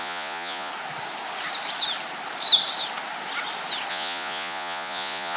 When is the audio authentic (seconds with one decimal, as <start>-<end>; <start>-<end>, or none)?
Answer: 0.7-3.9

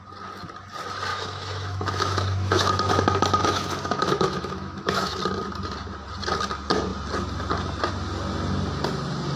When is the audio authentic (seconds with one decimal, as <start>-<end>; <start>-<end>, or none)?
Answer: 0.0-1.1; 2.9-3.4; 5.2-9.4

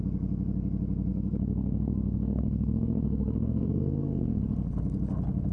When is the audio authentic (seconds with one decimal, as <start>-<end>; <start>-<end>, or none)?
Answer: 0.0-1.1; 4.4-5.5